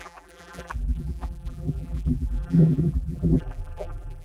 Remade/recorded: remade